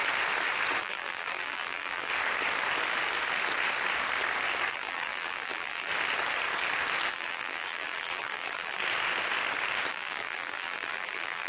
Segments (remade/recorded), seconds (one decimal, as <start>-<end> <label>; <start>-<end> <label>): 0.0-0.8 recorded; 0.8-2.1 remade; 2.1-4.7 recorded; 4.7-5.9 remade; 5.9-7.1 recorded; 7.1-8.8 remade; 8.8-9.9 recorded; 9.9-11.5 remade